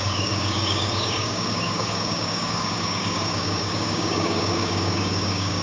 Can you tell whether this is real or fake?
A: fake